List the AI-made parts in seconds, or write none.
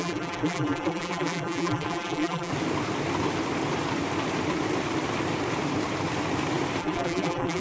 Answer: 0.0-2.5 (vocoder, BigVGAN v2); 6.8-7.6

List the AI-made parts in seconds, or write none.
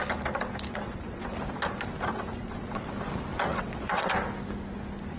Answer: 0.7-1.4 (vocoder, WaveNeXt); 2.1-2.9; 3.5-4.1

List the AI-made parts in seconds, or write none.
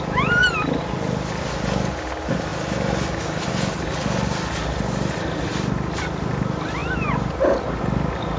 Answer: none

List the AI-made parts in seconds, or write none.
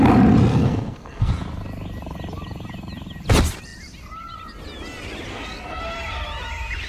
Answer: 0.5-1.3 (codec, SNAC); 5.3-5.8